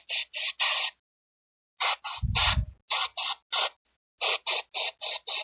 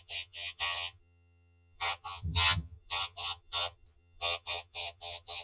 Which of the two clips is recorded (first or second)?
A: first